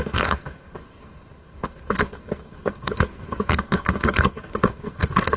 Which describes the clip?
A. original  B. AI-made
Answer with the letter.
B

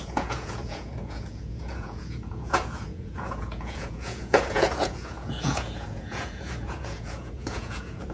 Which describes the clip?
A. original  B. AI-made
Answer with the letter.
B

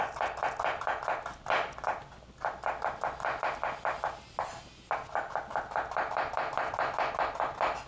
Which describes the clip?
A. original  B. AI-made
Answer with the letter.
A